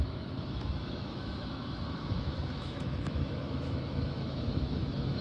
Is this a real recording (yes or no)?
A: no